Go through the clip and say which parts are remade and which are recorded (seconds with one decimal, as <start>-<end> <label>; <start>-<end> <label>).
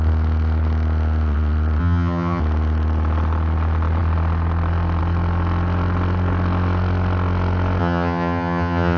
0.0-1.8 recorded; 1.8-2.4 remade; 2.4-7.8 recorded; 7.8-9.0 remade